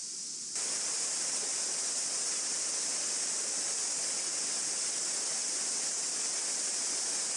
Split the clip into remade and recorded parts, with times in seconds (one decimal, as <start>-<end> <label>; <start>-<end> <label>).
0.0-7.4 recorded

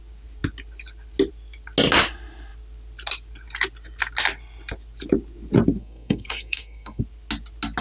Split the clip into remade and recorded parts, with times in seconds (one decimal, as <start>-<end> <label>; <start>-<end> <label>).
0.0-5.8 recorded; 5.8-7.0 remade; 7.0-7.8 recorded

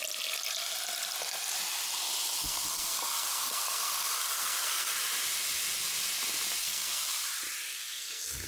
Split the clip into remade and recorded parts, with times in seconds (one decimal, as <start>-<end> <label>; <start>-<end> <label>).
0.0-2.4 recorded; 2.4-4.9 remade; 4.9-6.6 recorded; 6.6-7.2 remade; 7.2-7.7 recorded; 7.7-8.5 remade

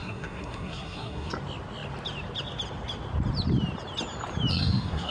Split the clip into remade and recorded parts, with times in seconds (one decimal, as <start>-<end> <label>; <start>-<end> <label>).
0.0-1.3 remade; 1.3-4.5 recorded; 4.5-5.1 remade